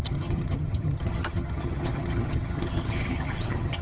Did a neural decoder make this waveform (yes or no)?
yes